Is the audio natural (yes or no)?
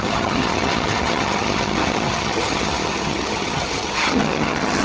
no